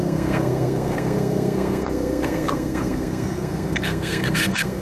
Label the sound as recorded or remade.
remade